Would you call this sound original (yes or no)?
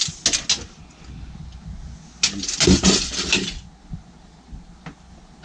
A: yes